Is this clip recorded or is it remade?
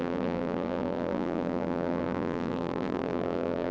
remade